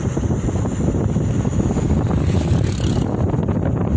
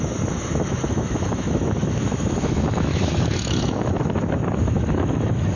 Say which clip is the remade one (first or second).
second